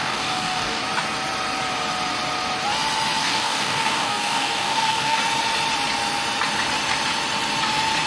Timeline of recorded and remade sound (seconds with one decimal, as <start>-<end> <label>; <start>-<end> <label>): 0.0-0.8 remade; 0.8-3.2 recorded; 3.2-5.2 remade; 5.2-8.1 recorded